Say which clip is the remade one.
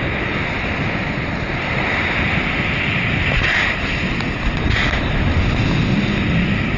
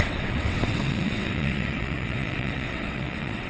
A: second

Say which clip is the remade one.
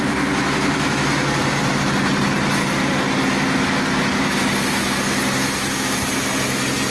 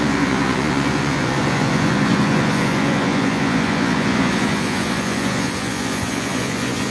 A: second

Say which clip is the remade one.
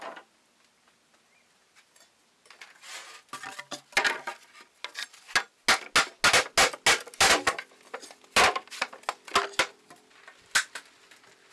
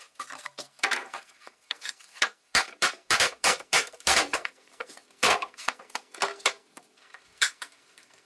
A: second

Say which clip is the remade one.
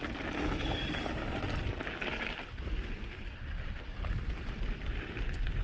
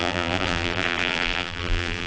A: second